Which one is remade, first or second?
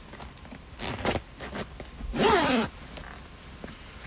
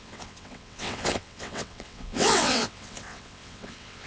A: second